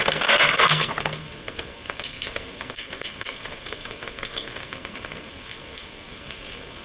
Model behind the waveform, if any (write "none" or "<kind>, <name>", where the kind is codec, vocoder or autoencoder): codec, SNAC